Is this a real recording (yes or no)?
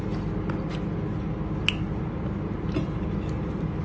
yes